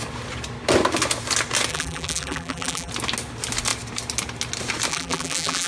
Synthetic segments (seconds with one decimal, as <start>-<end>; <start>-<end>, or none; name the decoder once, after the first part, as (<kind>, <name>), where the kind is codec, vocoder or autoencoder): 1.7-2.9 (vocoder, BigVGAN v2); 4.9-5.7